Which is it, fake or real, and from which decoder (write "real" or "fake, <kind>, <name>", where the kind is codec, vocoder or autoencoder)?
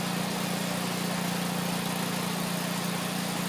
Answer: real